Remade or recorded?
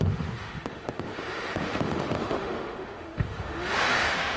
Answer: remade